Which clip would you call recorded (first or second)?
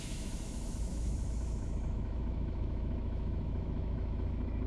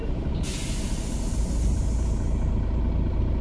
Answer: second